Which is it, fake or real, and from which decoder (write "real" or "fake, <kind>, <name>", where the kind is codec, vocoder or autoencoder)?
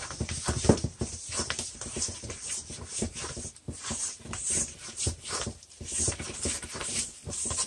fake, vocoder, BigVGAN v2